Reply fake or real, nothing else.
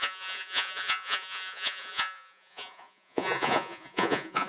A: fake